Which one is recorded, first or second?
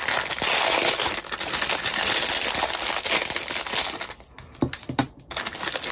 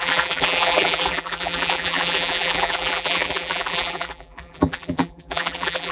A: first